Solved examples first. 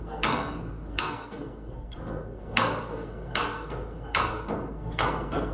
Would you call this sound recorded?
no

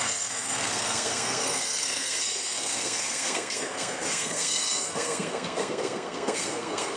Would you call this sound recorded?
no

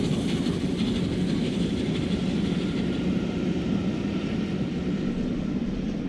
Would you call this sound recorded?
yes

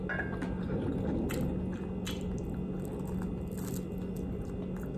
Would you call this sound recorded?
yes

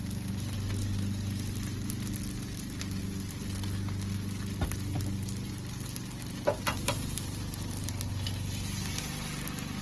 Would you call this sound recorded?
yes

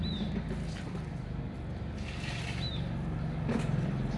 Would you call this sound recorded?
yes